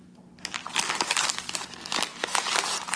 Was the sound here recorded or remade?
recorded